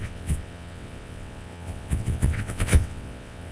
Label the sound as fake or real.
fake